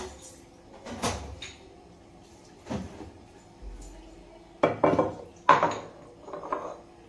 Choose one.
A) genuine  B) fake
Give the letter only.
A